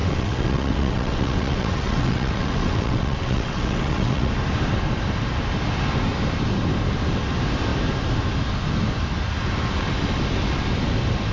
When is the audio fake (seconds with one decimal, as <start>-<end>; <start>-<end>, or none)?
0.0-4.3